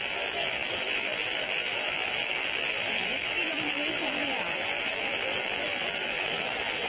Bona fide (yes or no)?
no